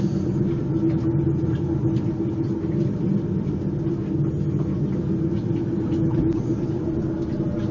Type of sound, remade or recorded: recorded